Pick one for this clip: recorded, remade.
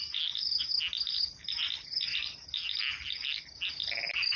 recorded